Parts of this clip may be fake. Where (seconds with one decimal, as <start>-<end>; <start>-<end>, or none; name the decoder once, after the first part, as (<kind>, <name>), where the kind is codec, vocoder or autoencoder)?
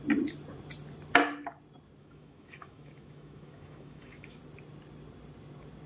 2.0-4.4 (autoencoder, DAC-VAE)